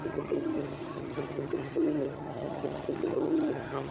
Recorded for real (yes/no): no